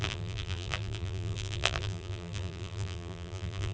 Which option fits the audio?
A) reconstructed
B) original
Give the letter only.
A